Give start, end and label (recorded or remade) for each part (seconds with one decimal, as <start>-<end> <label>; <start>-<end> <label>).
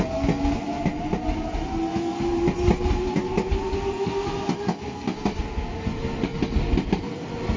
0.0-7.6 recorded